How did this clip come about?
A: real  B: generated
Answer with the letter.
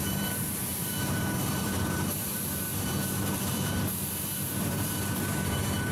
B